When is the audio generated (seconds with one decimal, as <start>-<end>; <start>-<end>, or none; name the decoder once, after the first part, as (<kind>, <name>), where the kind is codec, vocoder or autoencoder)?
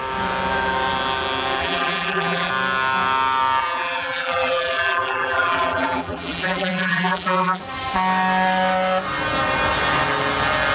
1.6-2.5 (vocoder, BigVGAN v2); 3.6-7.6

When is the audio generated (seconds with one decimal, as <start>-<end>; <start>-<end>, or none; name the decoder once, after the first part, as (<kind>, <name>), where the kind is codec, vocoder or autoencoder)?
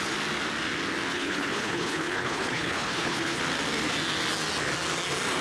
1.1-3.4 (codec, HILCodec)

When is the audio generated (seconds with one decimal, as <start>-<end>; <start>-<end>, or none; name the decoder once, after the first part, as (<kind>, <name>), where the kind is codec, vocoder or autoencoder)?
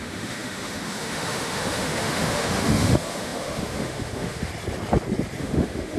0.0-4.5 (autoencoder, DAC-VAE); 5.4-6.0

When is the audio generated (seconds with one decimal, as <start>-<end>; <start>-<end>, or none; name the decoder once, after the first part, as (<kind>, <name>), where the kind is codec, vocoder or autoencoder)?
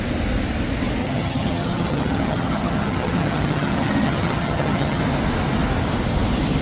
1.0-5.0 (vocoder, HiFi-GAN)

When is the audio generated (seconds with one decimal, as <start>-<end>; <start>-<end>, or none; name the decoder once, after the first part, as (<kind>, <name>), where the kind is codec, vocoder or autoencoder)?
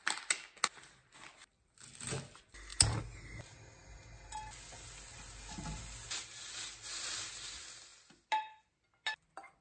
none